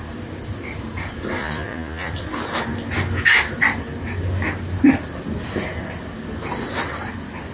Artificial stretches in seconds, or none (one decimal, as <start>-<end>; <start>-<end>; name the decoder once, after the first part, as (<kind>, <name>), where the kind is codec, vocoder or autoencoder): 1.4-2.1 (vocoder, Vocos)